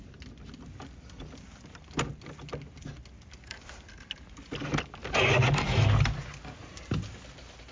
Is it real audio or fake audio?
real